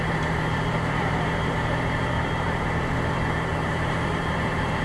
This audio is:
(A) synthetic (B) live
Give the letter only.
A